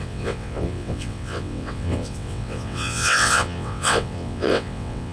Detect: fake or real fake